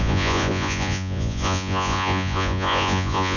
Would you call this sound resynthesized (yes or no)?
yes